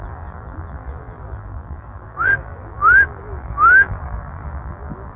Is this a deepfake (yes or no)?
yes